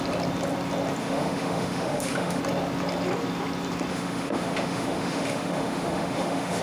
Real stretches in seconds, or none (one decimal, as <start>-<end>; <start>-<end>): 0.0-1.0; 2.4-3.9